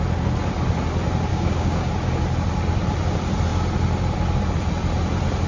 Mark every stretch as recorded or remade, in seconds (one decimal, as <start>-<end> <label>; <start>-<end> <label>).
0.0-1.3 recorded; 1.3-1.9 remade; 1.9-5.5 recorded